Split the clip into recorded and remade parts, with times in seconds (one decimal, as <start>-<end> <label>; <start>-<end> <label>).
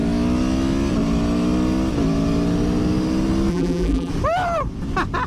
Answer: 0.0-3.5 recorded; 3.5-4.1 remade; 4.1-5.3 recorded